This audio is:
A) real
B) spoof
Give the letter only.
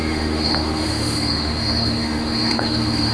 B